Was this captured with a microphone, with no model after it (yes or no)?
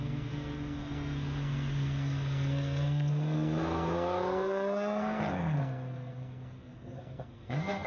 no